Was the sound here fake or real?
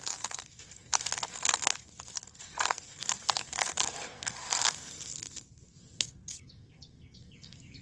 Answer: fake